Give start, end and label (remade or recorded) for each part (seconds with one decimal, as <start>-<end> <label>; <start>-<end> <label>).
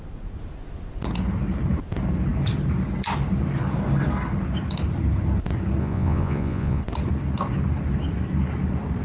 0.0-5.8 recorded; 5.8-6.8 remade; 6.8-9.0 recorded